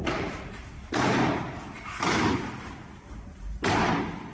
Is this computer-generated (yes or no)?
no